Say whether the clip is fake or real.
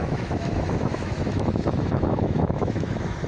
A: fake